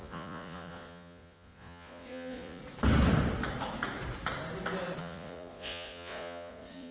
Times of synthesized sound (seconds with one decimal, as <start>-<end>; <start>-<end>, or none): 0.0-2.6; 5.0-6.9